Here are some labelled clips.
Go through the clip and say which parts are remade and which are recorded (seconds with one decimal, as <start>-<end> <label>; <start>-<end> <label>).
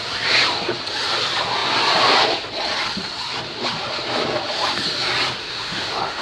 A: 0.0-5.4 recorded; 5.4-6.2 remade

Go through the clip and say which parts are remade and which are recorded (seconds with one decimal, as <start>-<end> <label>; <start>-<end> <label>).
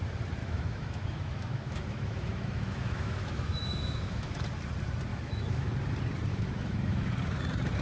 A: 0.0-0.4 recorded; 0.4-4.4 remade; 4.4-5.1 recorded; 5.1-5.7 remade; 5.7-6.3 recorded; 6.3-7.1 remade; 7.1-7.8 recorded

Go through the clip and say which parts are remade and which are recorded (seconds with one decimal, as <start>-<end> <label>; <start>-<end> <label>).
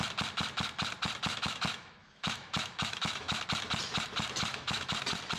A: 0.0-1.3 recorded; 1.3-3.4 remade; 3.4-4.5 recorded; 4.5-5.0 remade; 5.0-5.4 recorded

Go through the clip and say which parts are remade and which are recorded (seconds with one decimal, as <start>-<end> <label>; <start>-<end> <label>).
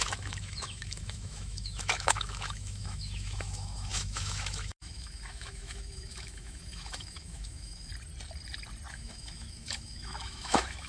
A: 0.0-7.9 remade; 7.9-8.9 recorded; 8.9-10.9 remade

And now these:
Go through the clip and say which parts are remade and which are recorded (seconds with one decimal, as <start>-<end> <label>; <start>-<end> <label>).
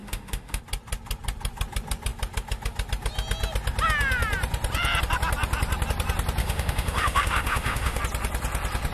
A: 0.0-0.6 remade; 0.6-6.4 recorded; 6.4-8.0 remade; 8.0-8.9 recorded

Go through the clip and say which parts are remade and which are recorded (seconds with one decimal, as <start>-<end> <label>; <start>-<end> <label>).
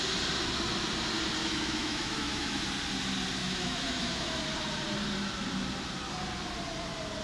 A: 0.0-1.4 recorded; 1.4-2.6 remade; 2.6-3.4 recorded; 3.4-4.4 remade; 4.4-7.2 recorded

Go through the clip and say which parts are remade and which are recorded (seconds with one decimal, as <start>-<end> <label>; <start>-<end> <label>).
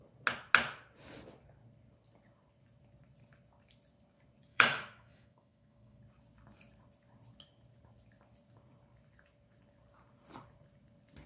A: 0.0-4.5 recorded; 4.5-6.0 remade; 6.0-11.3 recorded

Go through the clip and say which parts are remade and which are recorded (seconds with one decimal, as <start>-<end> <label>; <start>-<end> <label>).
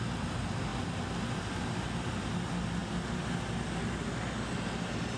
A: 0.0-5.2 recorded